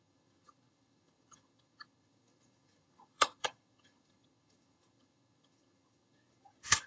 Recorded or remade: remade